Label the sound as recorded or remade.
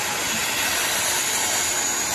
recorded